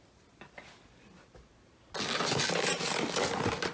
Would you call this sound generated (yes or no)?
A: no